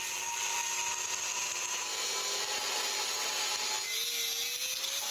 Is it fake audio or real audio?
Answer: real